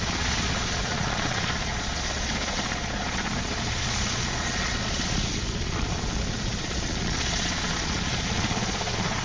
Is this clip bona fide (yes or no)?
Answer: no